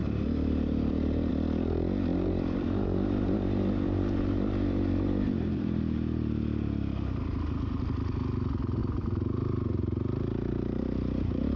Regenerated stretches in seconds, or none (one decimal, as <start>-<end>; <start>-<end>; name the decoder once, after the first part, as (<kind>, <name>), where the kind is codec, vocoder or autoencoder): 0.0-1.3 (vocoder, BigVGAN v2); 2.1-5.8; 8.8-11.6